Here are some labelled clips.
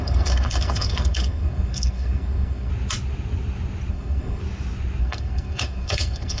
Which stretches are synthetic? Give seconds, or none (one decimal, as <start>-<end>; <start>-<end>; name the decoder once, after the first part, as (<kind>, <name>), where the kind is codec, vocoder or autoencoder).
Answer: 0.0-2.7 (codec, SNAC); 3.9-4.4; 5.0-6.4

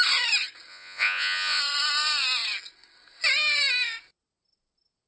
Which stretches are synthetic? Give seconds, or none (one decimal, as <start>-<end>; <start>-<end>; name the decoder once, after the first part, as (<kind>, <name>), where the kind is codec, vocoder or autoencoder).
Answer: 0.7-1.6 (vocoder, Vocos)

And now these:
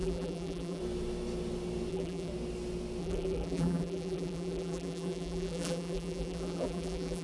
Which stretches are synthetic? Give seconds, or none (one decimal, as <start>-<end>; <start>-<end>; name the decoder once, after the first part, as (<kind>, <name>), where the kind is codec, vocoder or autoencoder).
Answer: 0.0-0.8 (vocoder, BigVGAN v2); 1.9-2.3; 3.0-7.2

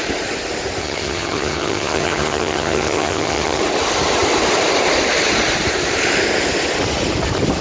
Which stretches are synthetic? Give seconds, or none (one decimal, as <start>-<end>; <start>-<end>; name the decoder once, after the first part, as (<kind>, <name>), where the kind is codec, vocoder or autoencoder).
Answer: 0.8-3.6 (vocoder, HiFi-GAN)

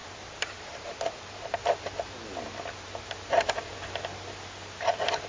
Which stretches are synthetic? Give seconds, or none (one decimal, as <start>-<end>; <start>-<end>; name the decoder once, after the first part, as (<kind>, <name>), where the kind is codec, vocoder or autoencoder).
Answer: 0.6-1.6 (vocoder, BigVGAN v2); 4.8-5.3